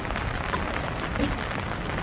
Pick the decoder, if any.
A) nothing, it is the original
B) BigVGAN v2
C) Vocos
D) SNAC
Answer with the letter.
A